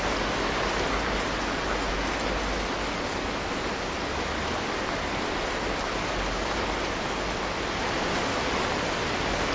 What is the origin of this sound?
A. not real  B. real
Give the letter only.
B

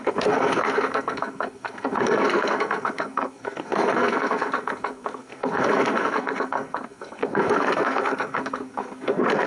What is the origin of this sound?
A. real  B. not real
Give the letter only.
B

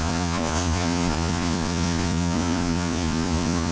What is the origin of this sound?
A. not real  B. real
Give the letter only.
A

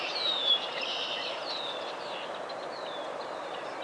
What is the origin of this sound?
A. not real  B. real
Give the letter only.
A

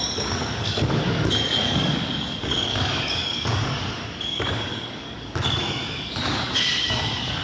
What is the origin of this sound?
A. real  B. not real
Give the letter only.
B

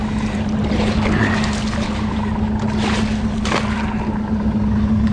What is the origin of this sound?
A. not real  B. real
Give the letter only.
B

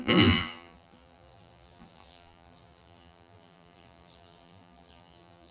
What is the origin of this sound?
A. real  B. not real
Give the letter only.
B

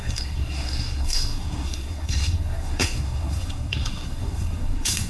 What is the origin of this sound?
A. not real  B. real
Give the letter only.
A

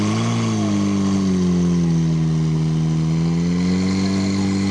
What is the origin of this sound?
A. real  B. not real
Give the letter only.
A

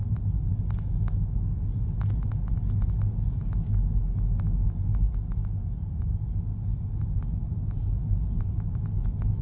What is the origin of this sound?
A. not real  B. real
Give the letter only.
B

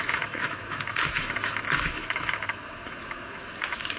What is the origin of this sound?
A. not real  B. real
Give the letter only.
A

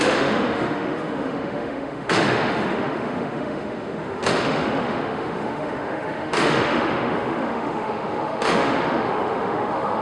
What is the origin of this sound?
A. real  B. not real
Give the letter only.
B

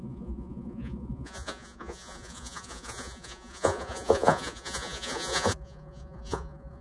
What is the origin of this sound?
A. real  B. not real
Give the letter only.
B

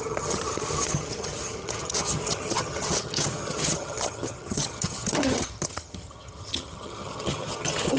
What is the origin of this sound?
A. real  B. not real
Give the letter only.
B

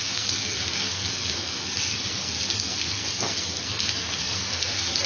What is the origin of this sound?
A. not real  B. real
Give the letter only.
A